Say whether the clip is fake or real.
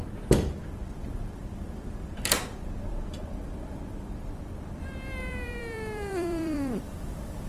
fake